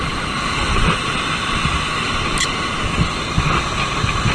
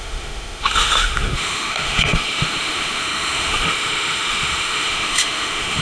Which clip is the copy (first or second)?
second